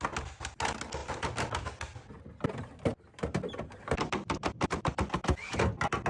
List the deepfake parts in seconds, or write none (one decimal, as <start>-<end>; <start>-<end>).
1.0-2.2; 2.9-4.9

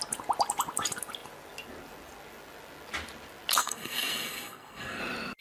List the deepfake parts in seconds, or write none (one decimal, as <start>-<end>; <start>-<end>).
3.6-5.0

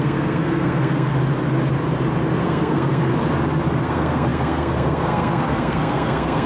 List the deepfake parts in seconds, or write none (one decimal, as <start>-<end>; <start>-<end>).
0.0-1.1; 2.4-3.1; 3.8-6.5

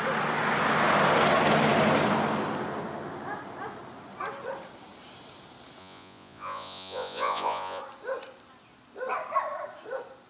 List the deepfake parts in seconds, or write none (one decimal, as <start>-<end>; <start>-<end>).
5.8-7.8